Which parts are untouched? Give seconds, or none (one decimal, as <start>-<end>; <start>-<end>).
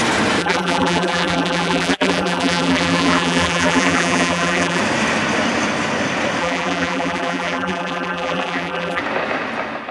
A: 0.0-0.4; 4.8-6.4; 9.0-9.9